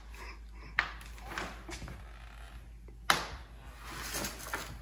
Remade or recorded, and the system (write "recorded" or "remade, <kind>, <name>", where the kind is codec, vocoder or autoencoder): recorded